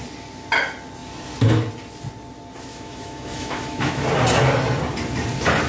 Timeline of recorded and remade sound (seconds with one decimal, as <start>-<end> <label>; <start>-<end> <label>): 0.0-2.7 recorded; 2.7-4.0 remade; 4.0-5.7 recorded